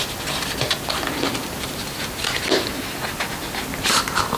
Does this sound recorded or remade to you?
recorded